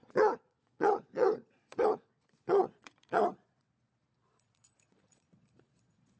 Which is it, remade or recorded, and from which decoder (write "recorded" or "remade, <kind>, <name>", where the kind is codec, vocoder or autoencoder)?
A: remade, vocoder, Vocos